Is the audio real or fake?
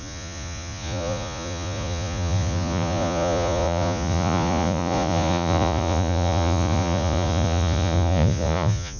fake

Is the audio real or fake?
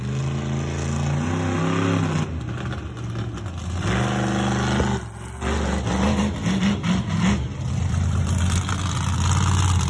real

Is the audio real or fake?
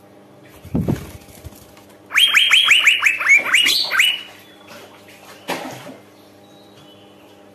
real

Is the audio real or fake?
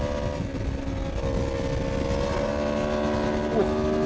real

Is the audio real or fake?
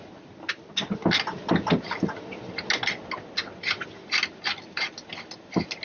real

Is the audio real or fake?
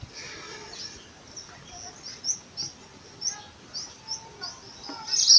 real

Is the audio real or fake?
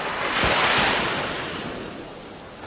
real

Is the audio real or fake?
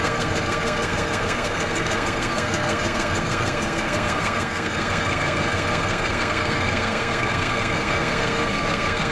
fake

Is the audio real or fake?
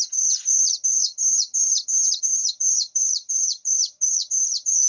fake